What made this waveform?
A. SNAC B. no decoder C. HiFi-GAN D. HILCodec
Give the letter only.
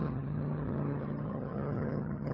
C